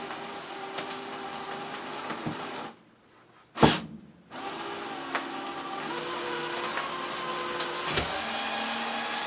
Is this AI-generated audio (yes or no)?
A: no